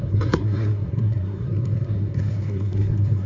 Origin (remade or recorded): remade